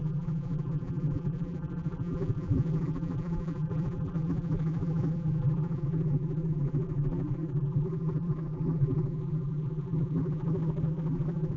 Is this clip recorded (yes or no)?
no